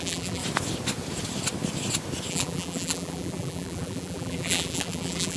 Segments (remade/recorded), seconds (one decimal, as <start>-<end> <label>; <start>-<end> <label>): 0.0-0.4 remade; 0.4-2.3 recorded; 2.3-5.4 remade

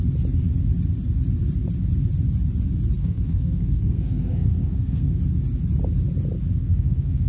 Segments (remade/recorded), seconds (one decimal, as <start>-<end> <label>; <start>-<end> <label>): 0.0-3.0 recorded; 3.0-5.2 remade; 5.2-6.6 recorded; 6.6-7.3 remade

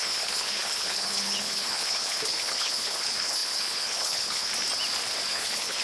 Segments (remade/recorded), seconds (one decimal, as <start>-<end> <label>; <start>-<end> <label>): 0.0-4.5 remade; 4.5-5.3 recorded; 5.3-5.8 remade

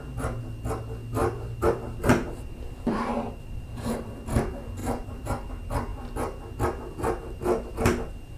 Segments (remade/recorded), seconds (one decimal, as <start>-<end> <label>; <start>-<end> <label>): 0.0-1.2 recorded; 1.2-4.1 remade; 4.1-4.8 recorded; 4.8-5.5 remade; 5.5-8.4 recorded

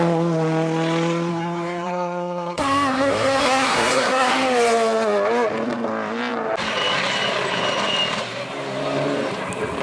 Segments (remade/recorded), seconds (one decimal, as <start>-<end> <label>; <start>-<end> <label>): 0.0-1.3 recorded; 1.3-4.3 remade; 4.3-9.8 recorded

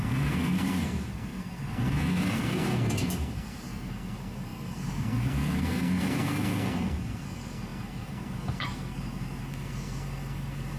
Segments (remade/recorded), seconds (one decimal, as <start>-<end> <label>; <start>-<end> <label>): 0.0-10.8 remade

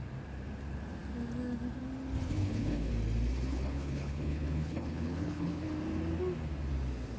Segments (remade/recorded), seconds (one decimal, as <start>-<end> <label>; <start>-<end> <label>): 0.0-2.2 recorded; 2.2-2.9 remade; 2.9-3.5 recorded; 3.5-5.7 remade; 5.7-7.2 recorded